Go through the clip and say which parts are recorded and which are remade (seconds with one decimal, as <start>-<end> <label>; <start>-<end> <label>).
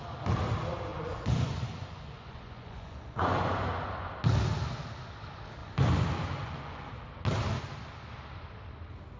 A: 0.0-0.9 recorded; 0.9-4.1 remade; 4.1-5.6 recorded; 5.6-6.9 remade; 6.9-9.2 recorded